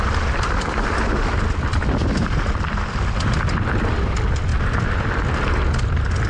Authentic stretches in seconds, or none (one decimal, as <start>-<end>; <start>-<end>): 4.5-6.3